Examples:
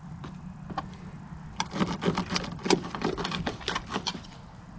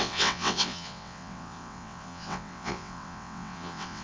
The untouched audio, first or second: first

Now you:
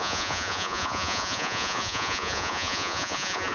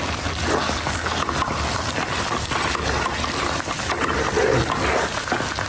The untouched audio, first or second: second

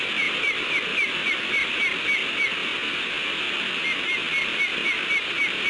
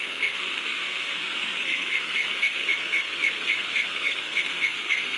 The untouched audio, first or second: first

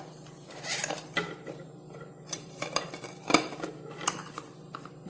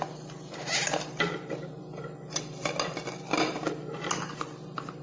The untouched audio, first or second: second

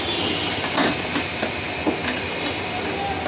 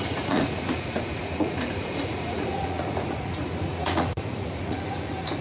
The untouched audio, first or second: first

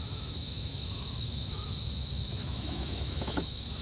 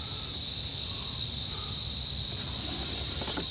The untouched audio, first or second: second